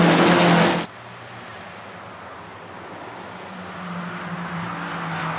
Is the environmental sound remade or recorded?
recorded